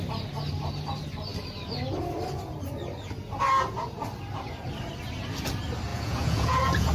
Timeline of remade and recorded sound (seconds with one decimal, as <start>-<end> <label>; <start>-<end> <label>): 0.0-5.9 recorded; 5.9-6.9 remade